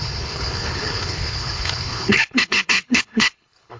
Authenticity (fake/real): fake